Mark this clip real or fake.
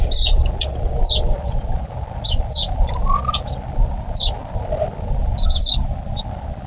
real